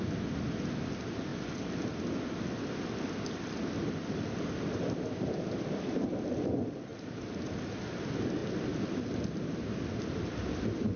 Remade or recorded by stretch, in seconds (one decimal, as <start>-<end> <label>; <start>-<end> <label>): 0.0-11.0 recorded